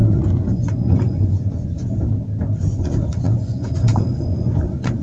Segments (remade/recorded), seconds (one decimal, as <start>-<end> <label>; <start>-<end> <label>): 0.0-2.1 remade; 2.1-2.6 recorded; 2.6-5.0 remade